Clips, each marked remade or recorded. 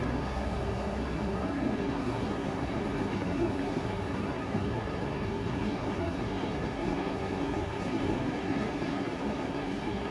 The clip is remade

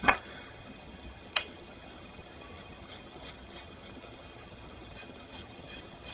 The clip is remade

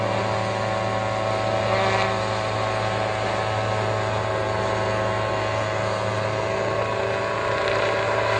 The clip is recorded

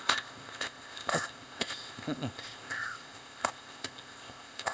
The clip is remade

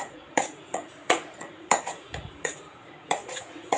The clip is remade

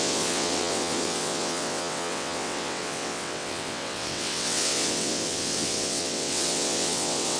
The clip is remade